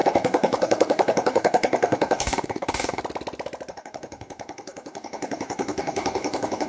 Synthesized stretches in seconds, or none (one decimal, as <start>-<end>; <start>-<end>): 0.0-3.0; 3.7-6.7